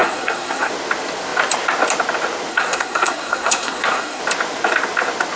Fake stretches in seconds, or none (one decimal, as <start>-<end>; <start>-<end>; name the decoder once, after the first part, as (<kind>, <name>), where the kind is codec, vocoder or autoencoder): 0.0-0.7 (codec, SNAC); 2.5-4.2